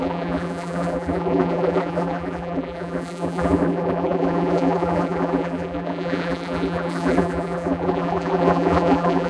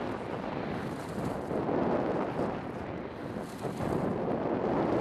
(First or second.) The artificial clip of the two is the first